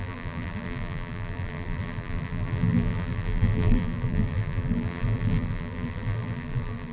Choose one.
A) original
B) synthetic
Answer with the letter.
B